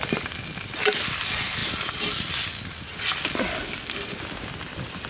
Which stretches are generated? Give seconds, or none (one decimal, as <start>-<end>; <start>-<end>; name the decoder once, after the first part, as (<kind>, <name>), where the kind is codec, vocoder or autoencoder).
none